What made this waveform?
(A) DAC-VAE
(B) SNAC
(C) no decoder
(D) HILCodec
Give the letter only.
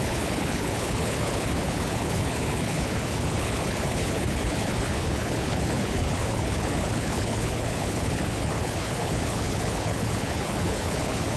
D